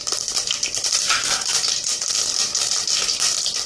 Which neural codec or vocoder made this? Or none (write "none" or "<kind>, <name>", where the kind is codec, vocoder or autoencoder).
none